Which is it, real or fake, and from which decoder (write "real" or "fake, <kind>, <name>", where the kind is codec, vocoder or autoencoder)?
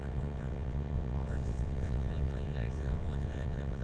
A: fake, vocoder, WaveNeXt